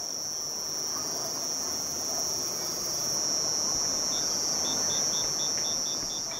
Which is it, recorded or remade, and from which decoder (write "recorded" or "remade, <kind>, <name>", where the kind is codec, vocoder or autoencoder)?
recorded